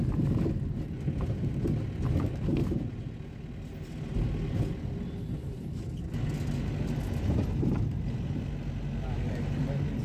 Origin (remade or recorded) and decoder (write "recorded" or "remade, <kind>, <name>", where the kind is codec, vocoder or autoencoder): recorded